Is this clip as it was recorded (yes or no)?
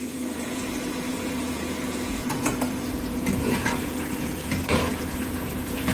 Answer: no